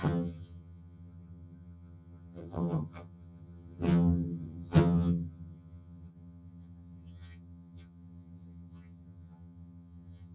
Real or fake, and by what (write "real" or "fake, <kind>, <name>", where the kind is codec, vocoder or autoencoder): fake, vocoder, HiFi-GAN